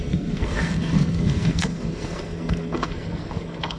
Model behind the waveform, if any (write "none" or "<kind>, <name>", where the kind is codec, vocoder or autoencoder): codec, SNAC